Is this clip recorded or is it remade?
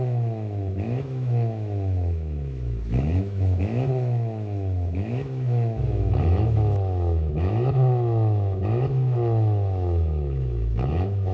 remade